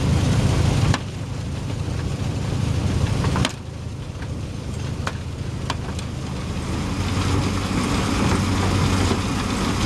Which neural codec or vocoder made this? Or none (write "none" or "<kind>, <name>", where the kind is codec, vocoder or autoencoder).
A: none